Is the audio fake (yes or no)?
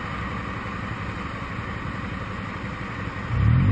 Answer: no